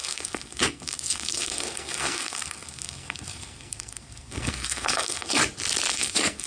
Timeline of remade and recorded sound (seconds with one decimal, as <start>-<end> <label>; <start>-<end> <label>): 0.0-5.4 remade; 5.4-5.9 recorded; 5.9-6.5 remade